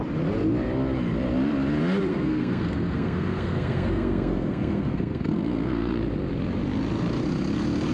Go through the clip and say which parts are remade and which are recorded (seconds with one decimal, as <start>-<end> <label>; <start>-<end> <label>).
0.0-2.1 recorded; 2.1-5.9 remade; 5.9-7.9 recorded